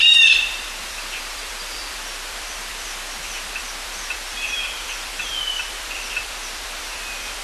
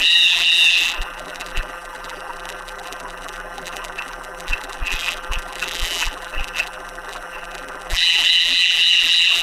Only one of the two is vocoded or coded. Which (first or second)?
second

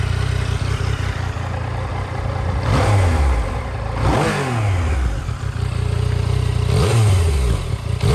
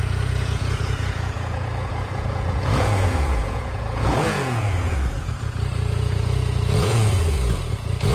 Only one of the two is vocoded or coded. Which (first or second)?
second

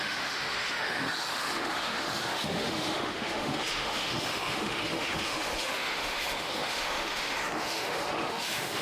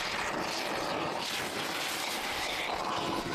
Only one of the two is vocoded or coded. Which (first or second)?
first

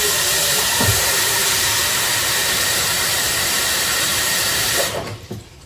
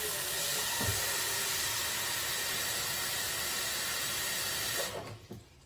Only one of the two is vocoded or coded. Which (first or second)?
first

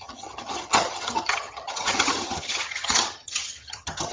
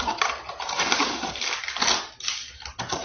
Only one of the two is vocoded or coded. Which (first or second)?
first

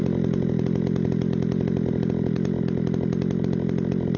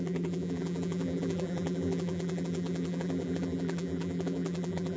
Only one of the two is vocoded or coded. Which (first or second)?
second